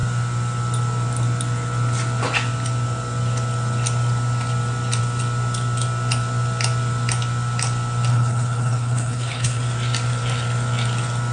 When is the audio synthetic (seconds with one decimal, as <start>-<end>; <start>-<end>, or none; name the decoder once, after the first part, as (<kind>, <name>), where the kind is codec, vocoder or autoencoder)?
8.1-9.6 (codec, HILCodec)